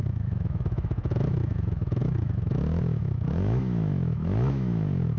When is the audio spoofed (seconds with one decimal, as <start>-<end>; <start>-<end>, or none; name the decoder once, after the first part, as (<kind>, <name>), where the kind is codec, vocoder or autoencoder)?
0.0-5.2 (autoencoder, DAC-VAE)